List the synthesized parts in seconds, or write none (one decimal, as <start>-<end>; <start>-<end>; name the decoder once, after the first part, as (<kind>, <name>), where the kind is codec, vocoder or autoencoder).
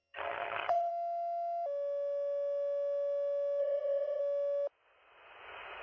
0.0-0.9 (vocoder, HiFi-GAN); 3.6-4.2